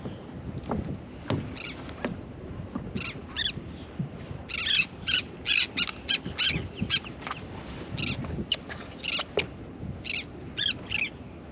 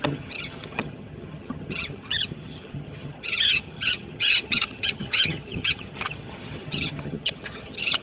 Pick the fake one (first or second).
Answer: second